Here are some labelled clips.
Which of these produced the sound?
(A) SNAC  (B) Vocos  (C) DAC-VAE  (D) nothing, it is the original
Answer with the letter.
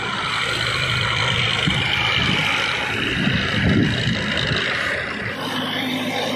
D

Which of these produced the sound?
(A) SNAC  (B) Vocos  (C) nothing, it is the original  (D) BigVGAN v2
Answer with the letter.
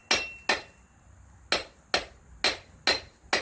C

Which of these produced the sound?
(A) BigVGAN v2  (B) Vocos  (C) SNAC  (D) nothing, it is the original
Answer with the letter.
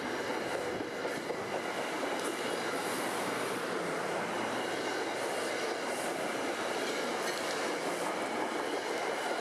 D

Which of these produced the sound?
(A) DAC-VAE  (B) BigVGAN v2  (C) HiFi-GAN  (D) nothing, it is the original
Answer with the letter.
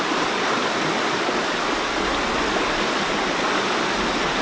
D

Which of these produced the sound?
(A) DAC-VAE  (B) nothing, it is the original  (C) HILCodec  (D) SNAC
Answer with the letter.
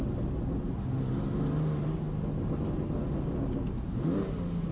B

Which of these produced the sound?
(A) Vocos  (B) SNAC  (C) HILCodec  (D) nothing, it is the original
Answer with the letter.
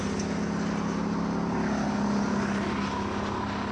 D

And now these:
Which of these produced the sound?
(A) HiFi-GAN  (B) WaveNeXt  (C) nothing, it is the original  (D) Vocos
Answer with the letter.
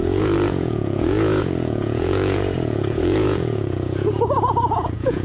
D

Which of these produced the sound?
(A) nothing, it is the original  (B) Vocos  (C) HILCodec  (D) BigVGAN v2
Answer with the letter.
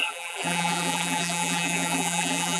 D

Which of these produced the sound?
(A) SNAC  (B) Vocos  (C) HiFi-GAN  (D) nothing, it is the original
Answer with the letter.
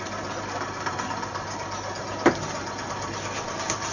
D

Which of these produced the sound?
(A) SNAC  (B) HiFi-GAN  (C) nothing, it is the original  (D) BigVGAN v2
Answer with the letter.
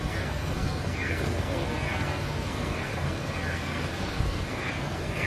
A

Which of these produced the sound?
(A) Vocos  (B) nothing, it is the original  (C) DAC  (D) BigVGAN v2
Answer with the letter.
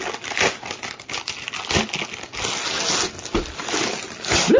B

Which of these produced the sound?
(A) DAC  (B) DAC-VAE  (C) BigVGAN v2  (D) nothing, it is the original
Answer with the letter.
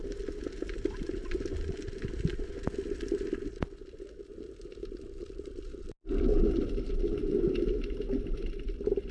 C